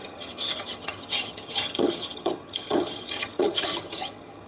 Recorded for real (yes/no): no